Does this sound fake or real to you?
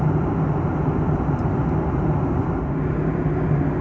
real